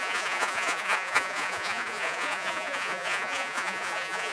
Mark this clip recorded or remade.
remade